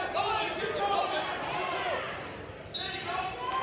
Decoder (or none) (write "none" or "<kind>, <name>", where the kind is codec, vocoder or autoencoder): none